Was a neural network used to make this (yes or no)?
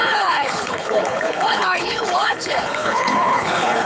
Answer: yes